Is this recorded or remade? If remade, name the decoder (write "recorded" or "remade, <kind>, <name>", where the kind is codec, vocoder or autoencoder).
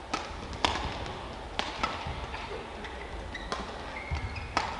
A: recorded